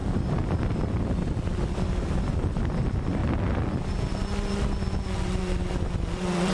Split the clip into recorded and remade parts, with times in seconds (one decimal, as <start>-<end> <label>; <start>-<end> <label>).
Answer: 0.0-1.7 recorded; 1.7-3.2 remade; 3.2-5.4 recorded; 5.4-6.5 remade